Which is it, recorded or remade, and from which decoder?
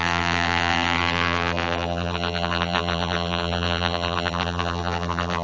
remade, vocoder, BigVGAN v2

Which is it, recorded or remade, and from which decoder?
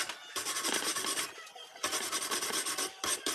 remade, vocoder, BigVGAN v2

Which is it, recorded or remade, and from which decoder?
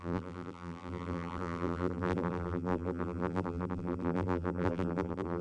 remade, vocoder, BigVGAN v2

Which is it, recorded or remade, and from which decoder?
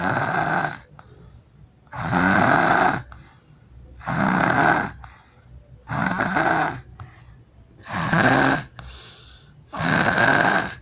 recorded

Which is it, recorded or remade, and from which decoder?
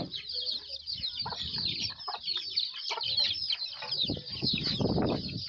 remade, vocoder, BigVGAN v2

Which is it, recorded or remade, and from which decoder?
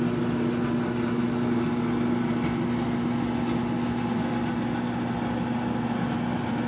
recorded